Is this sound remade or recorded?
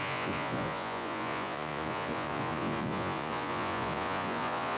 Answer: remade